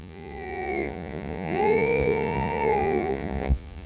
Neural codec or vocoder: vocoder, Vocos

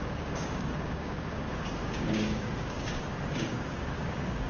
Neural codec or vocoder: codec, DAC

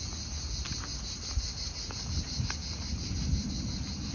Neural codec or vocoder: none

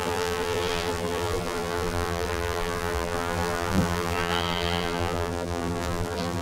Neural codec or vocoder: vocoder, BigVGAN v2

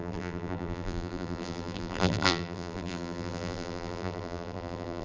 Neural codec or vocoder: vocoder, BigVGAN v2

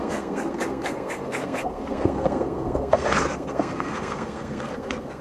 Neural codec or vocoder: codec, SNAC